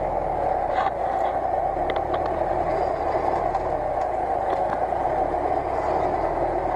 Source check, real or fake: real